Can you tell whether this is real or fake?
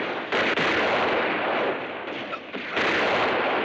real